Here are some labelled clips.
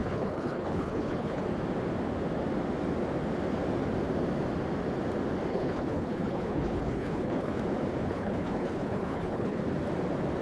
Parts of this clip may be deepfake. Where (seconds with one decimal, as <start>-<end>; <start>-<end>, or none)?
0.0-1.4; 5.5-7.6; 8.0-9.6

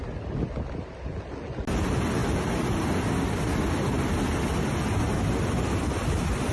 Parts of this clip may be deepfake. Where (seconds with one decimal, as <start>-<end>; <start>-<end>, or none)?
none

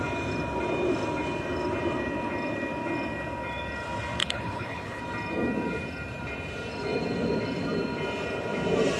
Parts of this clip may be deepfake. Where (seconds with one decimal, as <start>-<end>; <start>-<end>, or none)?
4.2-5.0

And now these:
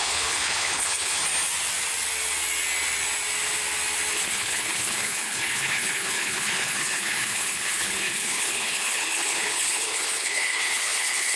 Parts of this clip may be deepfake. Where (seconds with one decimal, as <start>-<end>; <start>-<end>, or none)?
0.0-1.2; 4.1-11.4

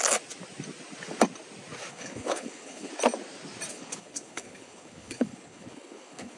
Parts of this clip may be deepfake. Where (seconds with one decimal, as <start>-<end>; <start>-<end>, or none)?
1.9-2.9; 3.7-6.4